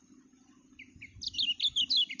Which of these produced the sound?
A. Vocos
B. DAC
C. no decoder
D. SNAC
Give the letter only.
C